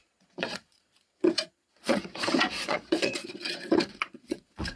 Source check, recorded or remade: remade